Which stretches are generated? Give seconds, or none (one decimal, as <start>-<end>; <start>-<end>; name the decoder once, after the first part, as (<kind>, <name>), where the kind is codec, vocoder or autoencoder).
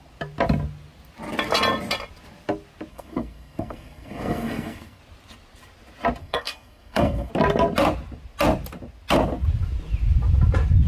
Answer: 2.9-5.0 (codec, SNAC); 6.2-7.3